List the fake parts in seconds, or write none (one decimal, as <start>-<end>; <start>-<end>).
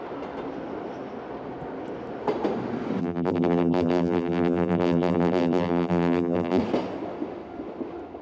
3.0-6.6